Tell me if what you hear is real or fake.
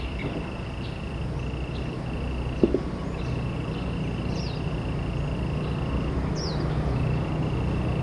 real